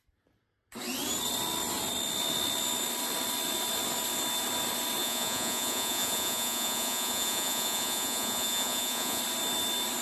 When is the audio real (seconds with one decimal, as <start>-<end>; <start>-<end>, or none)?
0.0-5.0; 9.2-10.0